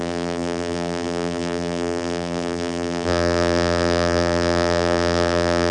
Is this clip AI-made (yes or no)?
yes